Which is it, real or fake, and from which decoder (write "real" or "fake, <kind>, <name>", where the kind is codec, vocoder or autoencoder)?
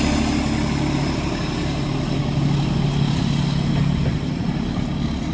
real